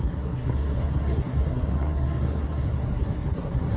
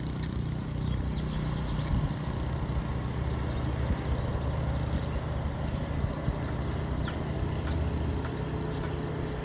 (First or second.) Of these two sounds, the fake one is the first